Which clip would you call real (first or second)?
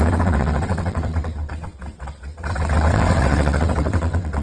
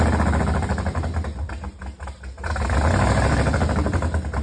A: second